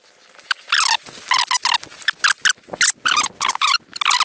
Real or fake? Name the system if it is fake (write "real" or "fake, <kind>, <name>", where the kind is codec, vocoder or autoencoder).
real